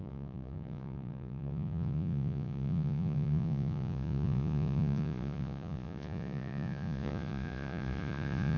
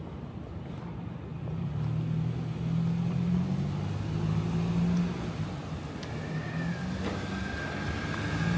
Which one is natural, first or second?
second